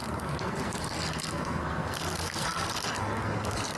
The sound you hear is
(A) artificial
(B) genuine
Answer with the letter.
A